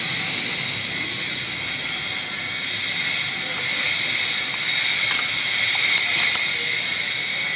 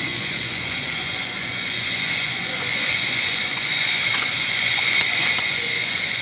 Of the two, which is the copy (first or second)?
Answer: second